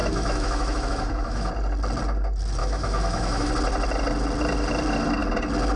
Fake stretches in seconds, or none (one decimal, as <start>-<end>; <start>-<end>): 0.0-1.5; 2.6-3.5